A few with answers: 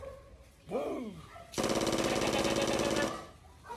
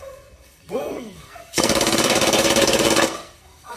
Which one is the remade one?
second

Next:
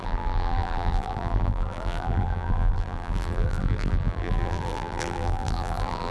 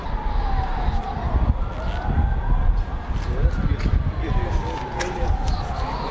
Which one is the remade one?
first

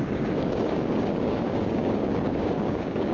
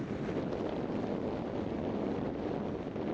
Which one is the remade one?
first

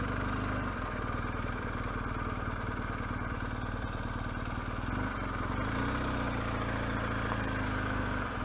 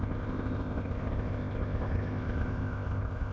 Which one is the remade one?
second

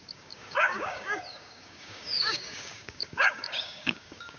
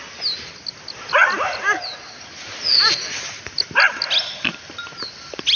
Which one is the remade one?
first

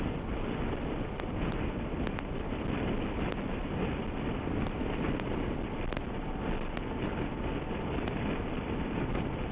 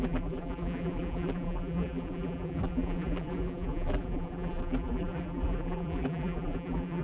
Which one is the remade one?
second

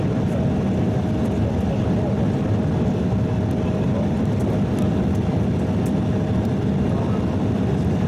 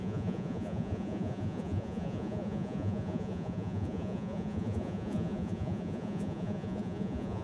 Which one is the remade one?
second